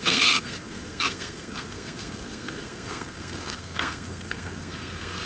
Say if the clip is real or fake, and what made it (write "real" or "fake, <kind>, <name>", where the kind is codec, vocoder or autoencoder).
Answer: fake, codec, SNAC